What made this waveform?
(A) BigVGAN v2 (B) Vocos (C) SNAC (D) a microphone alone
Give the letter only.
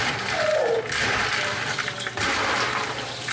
D